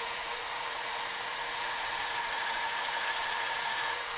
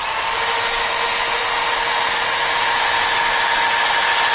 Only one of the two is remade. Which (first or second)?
first